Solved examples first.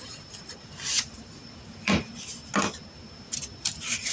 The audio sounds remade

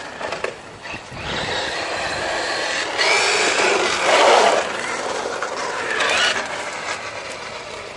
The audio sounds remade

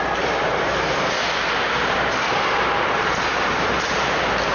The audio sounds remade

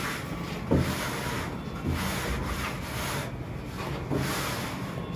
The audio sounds recorded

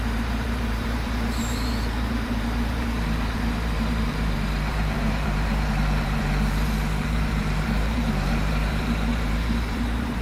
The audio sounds remade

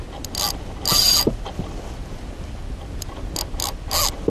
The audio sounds recorded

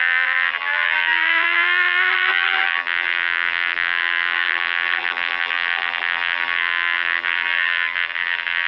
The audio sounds remade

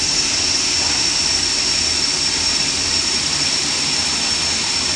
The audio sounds remade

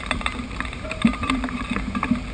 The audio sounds remade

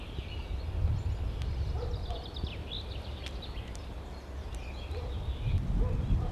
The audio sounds recorded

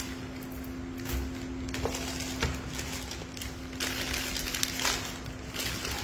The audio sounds recorded